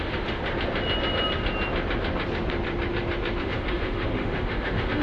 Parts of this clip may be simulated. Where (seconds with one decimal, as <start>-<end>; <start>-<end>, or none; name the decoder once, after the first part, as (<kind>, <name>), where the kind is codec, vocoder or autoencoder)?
0.0-0.4 (autoencoder, DAC-VAE); 3.4-5.0